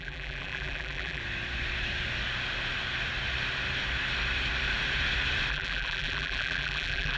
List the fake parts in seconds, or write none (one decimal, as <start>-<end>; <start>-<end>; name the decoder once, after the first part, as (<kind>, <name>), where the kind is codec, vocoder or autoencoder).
0.0-1.2 (vocoder, BigVGAN v2); 5.5-7.2